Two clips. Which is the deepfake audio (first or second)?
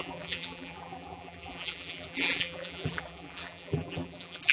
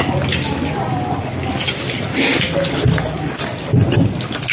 first